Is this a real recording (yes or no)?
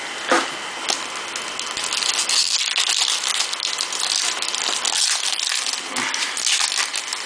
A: yes